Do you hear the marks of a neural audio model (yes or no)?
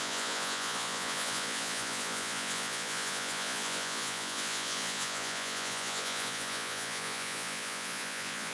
yes